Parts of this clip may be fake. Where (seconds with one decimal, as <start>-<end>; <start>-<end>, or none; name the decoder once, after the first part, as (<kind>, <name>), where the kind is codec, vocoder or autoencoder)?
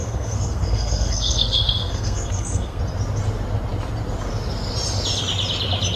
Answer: 0.0-2.8 (codec, SNAC)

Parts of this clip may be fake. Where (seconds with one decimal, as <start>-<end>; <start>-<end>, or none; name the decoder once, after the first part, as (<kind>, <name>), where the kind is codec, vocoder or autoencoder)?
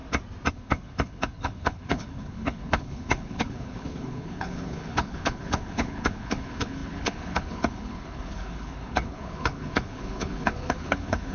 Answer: 0.5-11.3 (codec, HILCodec)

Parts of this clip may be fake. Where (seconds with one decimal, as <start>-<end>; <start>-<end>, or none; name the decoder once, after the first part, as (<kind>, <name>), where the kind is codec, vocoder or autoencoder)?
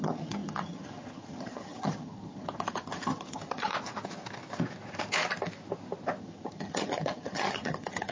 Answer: 0.0-3.7 (vocoder, HiFi-GAN); 6.2-8.1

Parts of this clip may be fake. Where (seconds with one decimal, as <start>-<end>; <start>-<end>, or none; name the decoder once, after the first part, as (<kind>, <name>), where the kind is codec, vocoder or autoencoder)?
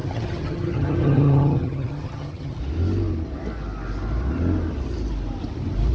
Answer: 0.0-2.6 (vocoder, HiFi-GAN)